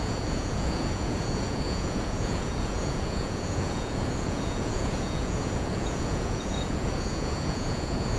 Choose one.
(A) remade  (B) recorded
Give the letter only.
A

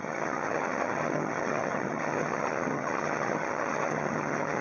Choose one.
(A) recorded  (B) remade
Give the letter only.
B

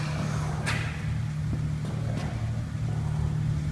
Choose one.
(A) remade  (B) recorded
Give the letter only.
B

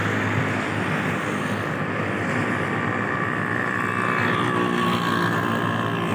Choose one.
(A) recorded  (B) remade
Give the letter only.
A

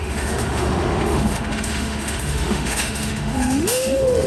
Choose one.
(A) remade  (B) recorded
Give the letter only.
A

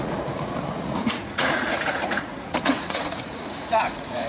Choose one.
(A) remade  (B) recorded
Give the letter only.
A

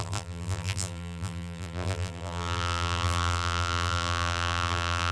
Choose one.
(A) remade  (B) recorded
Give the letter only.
A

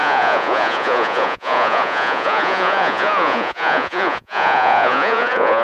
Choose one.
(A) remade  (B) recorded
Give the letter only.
A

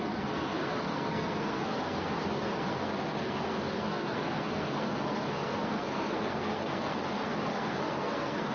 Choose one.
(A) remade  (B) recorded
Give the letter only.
A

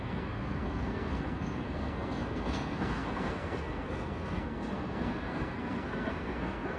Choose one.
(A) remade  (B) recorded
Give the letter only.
A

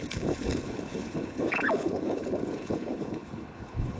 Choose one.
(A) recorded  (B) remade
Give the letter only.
B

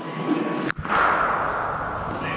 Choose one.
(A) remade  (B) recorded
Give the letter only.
B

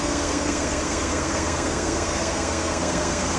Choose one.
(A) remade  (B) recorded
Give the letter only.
A